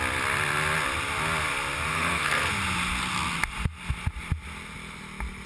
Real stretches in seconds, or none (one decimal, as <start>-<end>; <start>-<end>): 0.0-1.9; 2.5-5.5